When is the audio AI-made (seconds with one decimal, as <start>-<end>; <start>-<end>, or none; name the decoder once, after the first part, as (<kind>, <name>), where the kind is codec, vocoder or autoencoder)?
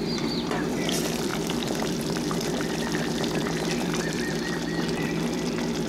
0.0-5.9 (vocoder, BigVGAN v2)